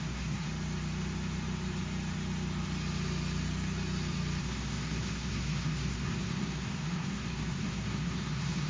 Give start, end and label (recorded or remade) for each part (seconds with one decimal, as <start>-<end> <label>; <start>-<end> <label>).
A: 0.0-0.5 remade; 0.5-4.4 recorded; 4.4-8.7 remade